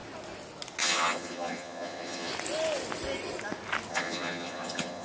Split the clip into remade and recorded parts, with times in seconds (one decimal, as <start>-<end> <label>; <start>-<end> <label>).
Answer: 0.0-0.8 recorded; 0.8-2.3 remade; 2.3-3.9 recorded; 3.9-5.0 remade